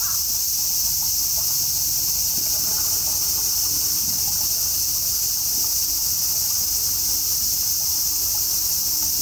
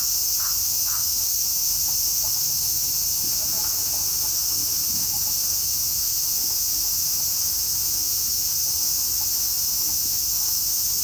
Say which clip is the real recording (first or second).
first